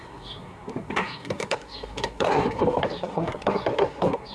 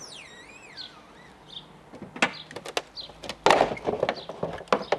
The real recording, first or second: second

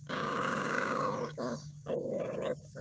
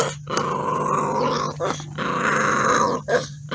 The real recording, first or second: second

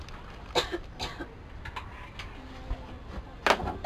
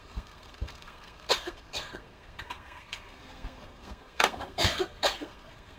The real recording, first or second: first